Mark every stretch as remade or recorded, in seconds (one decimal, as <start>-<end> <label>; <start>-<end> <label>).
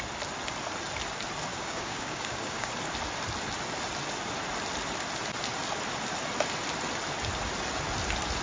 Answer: 0.0-1.5 recorded; 1.5-2.7 remade; 2.7-8.4 recorded